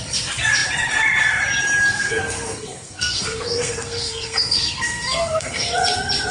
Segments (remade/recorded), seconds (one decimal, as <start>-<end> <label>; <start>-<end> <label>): 0.0-1.9 recorded; 1.9-5.7 remade; 5.7-6.3 recorded